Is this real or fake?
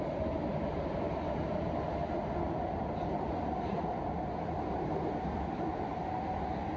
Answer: real